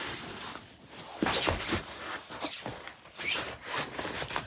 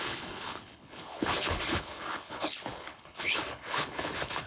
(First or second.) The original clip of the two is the first